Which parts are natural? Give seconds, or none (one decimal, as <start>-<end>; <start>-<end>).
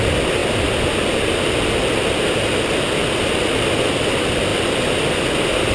0.0-5.7